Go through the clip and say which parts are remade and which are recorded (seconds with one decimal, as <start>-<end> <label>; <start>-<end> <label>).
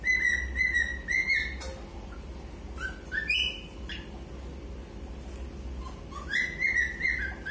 0.0-7.5 recorded